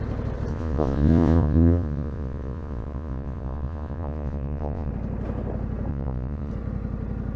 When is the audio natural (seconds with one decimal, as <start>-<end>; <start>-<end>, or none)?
0.0-0.5; 4.9-5.9; 6.5-7.4